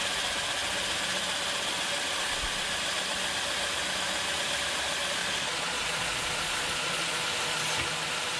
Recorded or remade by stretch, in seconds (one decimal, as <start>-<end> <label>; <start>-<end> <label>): 0.0-5.2 recorded; 5.2-7.2 remade; 7.2-8.4 recorded